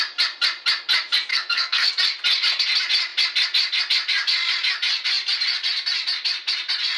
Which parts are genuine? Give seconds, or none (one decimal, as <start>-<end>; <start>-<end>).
0.0-1.3; 1.9-7.0

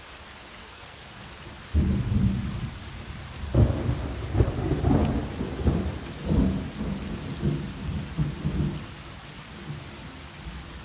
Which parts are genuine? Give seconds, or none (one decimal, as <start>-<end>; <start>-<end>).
0.0-0.6; 1.3-10.8

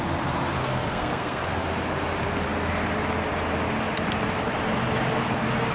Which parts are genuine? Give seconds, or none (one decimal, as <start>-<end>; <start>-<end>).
0.0-0.6; 1.4-5.7

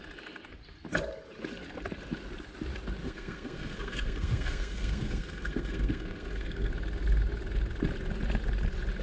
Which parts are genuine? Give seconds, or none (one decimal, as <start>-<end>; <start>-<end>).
0.0-3.0; 6.7-9.0

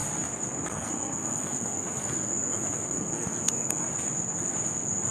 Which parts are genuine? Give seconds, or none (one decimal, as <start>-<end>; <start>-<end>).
0.0-0.7; 3.9-5.1

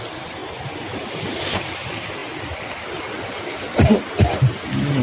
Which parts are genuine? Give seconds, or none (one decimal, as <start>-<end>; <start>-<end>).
0.0-5.0

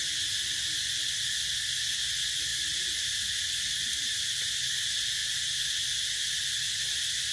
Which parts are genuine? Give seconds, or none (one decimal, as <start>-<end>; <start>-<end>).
0.0-7.3

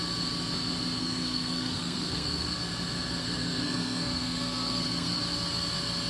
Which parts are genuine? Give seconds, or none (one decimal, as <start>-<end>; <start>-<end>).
0.0-1.0; 2.6-3.2; 5.2-6.1